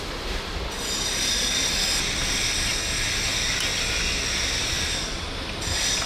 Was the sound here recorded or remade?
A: recorded